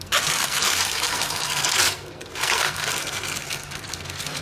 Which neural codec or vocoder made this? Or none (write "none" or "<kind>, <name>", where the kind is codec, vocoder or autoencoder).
codec, SNAC